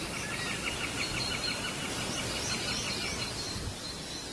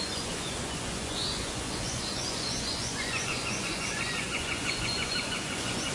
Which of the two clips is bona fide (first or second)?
first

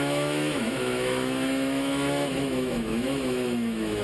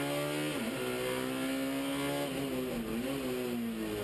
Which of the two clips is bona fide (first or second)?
second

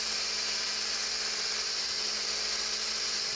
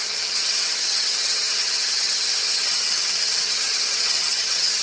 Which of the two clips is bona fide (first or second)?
first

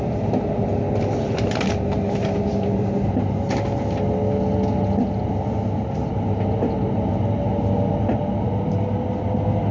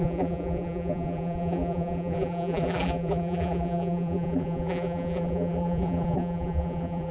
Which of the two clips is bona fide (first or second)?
first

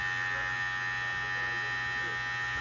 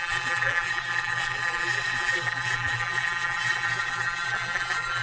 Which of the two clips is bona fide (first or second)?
first